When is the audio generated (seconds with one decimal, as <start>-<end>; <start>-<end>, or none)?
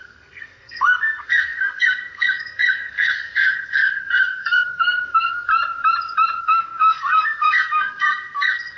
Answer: 0.0-5.5; 6.4-8.8